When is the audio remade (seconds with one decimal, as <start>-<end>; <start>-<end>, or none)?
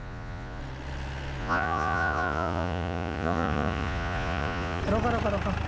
0.0-0.6; 1.4-4.8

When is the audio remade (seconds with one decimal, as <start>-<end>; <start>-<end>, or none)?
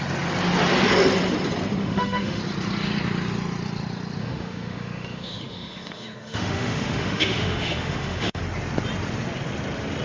1.8-2.4; 4.2-8.4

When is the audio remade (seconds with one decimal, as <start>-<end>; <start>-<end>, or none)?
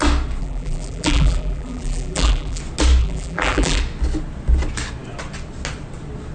0.4-2.6; 3.0-3.8